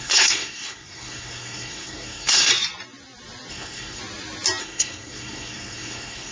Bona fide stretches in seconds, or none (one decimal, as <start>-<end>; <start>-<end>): 2.5-3.5; 4.0-4.6